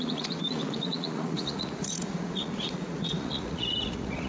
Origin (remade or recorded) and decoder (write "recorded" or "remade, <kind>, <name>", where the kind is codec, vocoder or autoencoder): remade, vocoder, Vocos